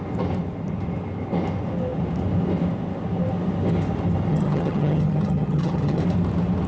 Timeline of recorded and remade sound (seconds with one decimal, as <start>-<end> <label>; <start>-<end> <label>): 0.0-4.3 recorded; 4.3-6.0 remade; 6.0-6.7 recorded